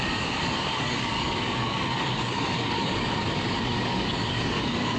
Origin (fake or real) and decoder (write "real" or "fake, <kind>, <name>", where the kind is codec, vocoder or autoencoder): fake, codec, DAC